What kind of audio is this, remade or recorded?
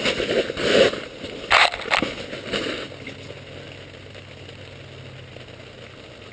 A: recorded